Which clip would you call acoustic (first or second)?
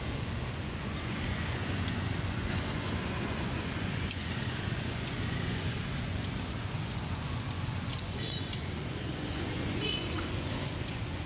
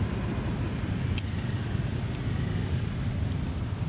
second